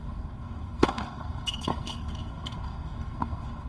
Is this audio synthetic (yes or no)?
yes